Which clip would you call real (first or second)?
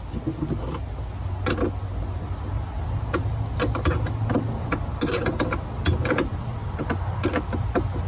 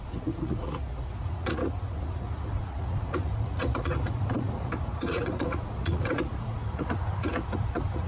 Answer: first